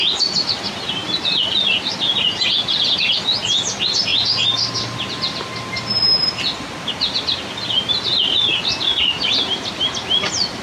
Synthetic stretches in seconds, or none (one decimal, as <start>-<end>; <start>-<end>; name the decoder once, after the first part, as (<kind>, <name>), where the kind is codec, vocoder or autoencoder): 4.1-4.6 (vocoder, Vocos)